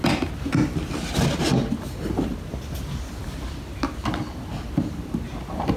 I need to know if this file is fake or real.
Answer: real